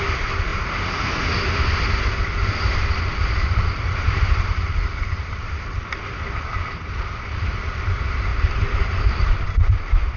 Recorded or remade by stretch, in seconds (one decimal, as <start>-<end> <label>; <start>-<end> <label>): 0.0-3.4 recorded; 3.4-5.8 remade; 5.8-8.3 recorded; 8.3-9.1 remade; 9.1-10.2 recorded